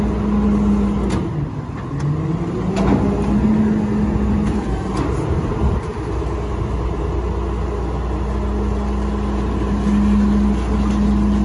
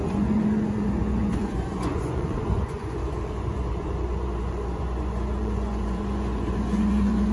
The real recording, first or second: first